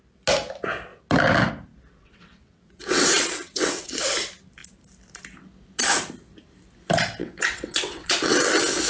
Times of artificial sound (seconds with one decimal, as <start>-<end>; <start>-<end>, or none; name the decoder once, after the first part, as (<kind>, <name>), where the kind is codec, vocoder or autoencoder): 2.0-3.9 (vocoder, WaveNeXt); 7.2-8.5